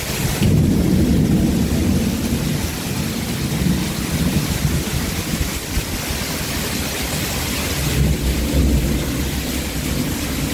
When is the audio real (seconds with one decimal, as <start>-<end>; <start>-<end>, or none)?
0.0-10.5